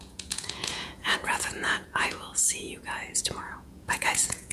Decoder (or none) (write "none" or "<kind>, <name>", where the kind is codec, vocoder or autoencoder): vocoder, Vocos